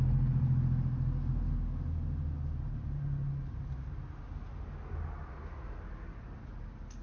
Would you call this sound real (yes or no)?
yes